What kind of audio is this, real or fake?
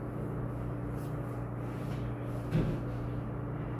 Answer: real